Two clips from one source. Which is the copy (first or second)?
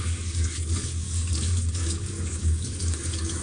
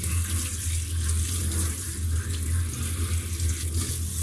first